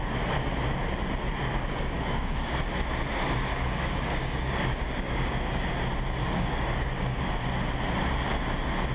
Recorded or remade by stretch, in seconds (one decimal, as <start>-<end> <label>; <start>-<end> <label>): 0.0-1.4 recorded; 1.4-2.6 remade; 2.6-3.5 recorded; 3.5-5.7 remade; 5.7-6.2 recorded; 6.2-7.2 remade; 7.2-8.9 recorded